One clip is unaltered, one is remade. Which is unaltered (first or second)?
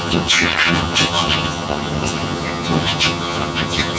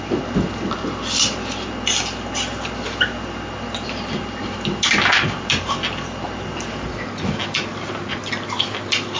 second